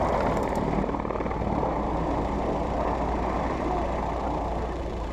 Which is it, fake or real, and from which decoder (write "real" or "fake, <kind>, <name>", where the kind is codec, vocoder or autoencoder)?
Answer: fake, vocoder, BigVGAN v2